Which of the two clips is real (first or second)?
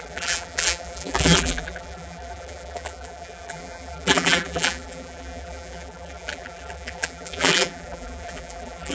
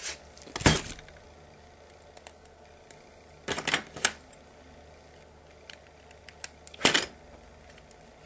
second